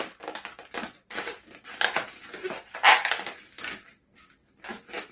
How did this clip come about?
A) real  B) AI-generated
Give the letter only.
A